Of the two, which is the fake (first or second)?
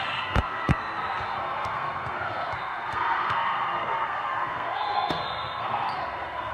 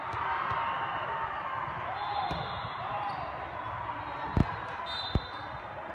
first